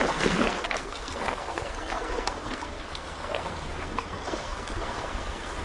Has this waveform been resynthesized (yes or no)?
yes